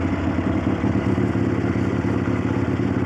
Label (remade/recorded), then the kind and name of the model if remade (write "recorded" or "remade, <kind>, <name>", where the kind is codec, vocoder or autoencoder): recorded